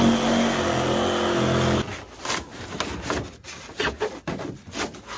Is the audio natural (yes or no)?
yes